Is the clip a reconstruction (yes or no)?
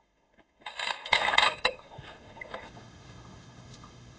yes